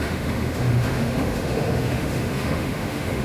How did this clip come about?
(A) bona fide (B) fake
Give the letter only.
B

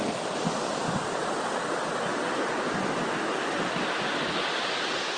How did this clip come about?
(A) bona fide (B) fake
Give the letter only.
A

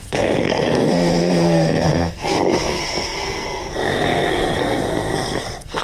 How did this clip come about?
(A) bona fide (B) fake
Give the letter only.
B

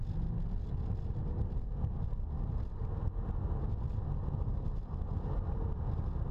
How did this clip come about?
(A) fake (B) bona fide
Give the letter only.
B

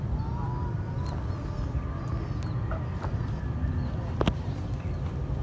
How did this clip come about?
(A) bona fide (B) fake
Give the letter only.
A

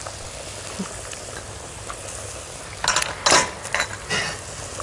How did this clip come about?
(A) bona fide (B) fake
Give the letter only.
A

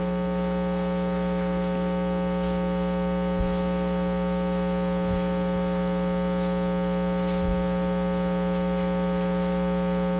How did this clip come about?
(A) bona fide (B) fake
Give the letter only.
A